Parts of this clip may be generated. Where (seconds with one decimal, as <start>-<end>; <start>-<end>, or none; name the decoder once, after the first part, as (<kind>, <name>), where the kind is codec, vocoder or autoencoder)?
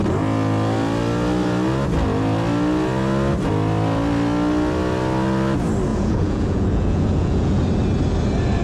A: 5.9-7.6 (vocoder, Vocos)